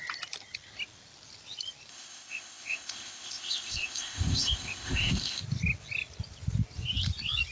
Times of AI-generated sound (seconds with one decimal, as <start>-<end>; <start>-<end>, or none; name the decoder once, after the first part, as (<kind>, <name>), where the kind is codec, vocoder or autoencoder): 1.9-5.4 (codec, ZipCodec)